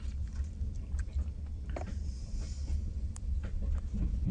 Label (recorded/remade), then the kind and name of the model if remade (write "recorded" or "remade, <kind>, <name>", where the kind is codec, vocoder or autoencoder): recorded